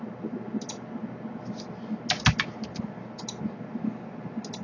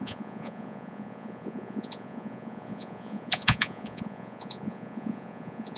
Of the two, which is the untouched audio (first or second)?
first